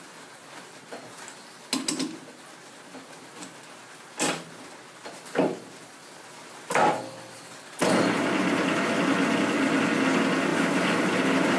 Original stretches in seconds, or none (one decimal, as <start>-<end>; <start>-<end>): 0.0-10.5